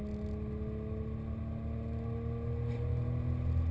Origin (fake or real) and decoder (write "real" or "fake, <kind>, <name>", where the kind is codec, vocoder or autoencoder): real